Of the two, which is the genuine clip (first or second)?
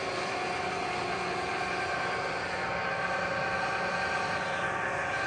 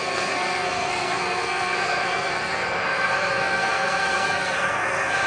first